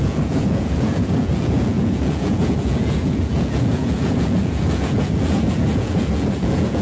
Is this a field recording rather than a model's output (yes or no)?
no